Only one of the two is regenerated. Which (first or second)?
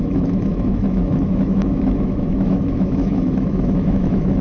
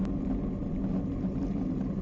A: first